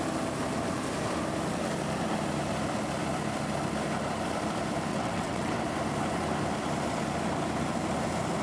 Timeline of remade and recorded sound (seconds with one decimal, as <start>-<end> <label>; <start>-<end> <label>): 0.0-4.9 recorded; 4.9-5.6 remade; 5.6-8.4 recorded